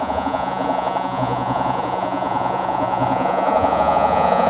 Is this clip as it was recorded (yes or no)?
no